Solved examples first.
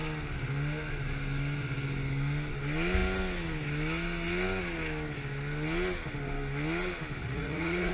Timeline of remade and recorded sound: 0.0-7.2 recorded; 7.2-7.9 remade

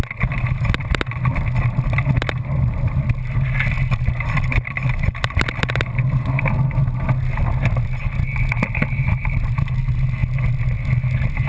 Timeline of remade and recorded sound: 0.0-11.5 recorded

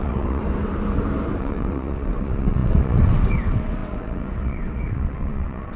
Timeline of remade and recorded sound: 0.0-0.4 remade; 0.4-1.4 recorded; 1.4-5.8 remade

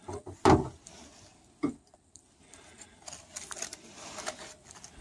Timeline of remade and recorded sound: 0.0-5.0 recorded